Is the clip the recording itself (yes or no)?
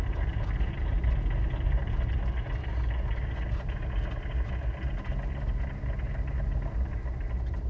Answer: yes